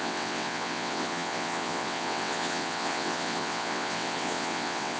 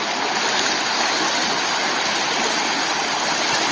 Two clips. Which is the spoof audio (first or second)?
first